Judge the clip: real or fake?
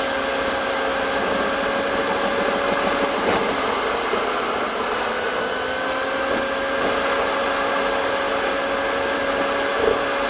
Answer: real